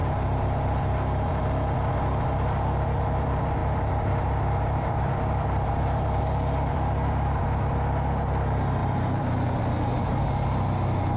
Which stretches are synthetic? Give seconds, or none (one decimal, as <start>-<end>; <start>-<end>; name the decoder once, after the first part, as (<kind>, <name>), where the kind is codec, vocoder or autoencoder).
0.0-1.4 (vocoder, BigVGAN v2); 3.6-6.2; 8.8-9.6